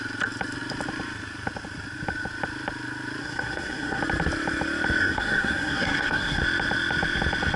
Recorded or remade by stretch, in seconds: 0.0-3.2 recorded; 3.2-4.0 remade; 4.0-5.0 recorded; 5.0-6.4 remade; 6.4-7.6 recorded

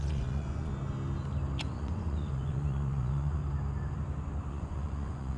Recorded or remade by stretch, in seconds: 0.0-0.7 remade; 0.7-1.6 recorded; 1.6-3.4 remade; 3.4-4.5 recorded; 4.5-5.4 remade

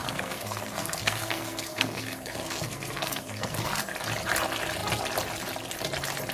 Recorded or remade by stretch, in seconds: 0.0-3.8 remade; 3.8-6.3 recorded

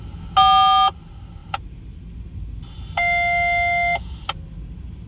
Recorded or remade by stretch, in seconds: 0.0-5.1 recorded

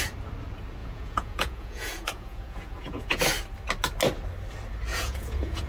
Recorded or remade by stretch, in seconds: 0.0-0.8 recorded; 0.8-3.2 remade; 3.2-4.9 recorded; 4.9-5.7 remade

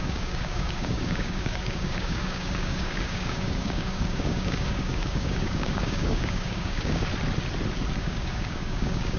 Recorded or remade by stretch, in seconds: 0.0-7.1 remade; 7.1-8.0 recorded; 8.0-9.2 remade

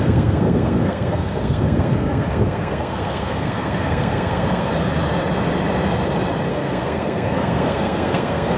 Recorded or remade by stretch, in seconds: 0.0-4.7 remade; 4.7-6.5 recorded; 6.5-8.6 remade